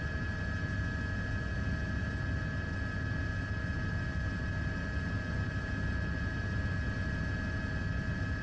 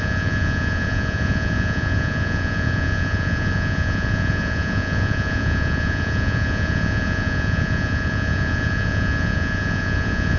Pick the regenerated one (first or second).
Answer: second